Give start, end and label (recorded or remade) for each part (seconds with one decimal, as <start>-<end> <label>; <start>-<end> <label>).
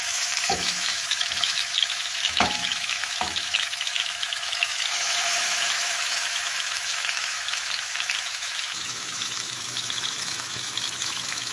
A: 0.0-11.5 remade